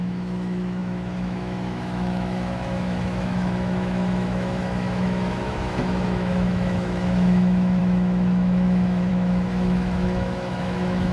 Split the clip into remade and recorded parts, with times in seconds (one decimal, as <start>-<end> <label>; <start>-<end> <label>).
0.0-11.1 remade